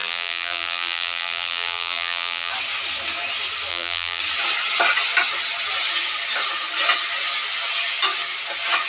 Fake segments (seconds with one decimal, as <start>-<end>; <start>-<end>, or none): 0.0-2.5; 3.7-4.2